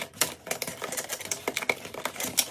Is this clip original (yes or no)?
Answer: yes